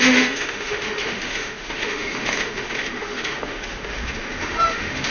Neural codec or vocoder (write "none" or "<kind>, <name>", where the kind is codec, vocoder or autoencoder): autoencoder, DAC-VAE